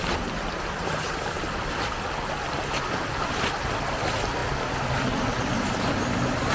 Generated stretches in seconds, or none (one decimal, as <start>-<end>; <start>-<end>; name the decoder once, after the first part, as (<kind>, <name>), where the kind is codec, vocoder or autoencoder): none